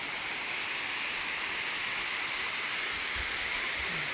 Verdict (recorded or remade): recorded